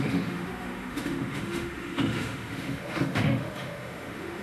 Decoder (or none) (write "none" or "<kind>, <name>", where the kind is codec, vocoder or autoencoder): autoencoder, DAC-VAE